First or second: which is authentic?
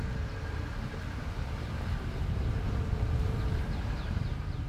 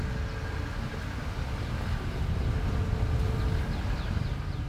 second